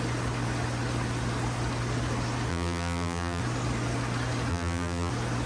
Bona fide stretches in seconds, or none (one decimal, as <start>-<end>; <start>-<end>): 0.0-2.5; 3.4-4.5; 5.1-5.5